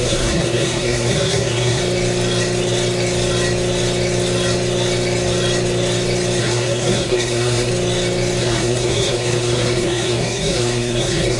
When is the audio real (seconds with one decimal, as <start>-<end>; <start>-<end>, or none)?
1.8-6.4; 7.7-8.4